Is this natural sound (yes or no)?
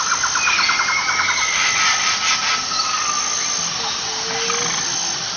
yes